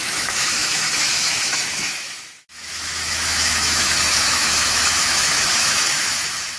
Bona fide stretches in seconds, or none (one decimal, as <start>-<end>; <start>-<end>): none